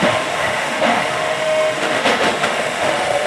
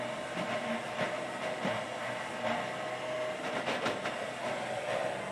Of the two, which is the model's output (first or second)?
first